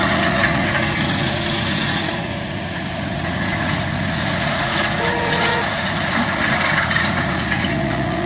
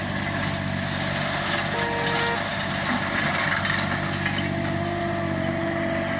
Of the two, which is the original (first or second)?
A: second